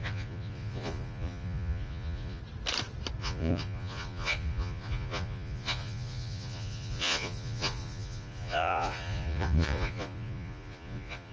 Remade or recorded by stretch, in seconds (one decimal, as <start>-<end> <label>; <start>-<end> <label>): 0.0-2.4 remade; 2.4-3.2 recorded; 3.2-11.3 remade